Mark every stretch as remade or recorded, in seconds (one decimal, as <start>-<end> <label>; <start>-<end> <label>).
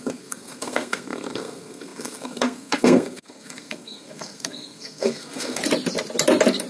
0.0-5.6 remade; 5.6-6.7 recorded